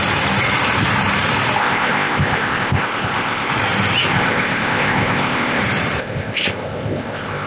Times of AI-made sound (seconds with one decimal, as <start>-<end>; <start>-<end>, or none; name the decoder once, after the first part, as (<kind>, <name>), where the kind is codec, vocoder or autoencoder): 1.6-3.5 (codec, ZipCodec); 4.1-5.6; 6.0-7.5